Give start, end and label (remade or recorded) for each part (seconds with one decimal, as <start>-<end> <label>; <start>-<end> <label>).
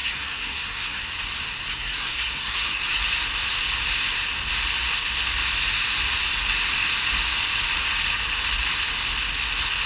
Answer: 0.0-1.0 remade; 1.0-1.7 recorded; 1.7-3.0 remade; 3.0-9.9 recorded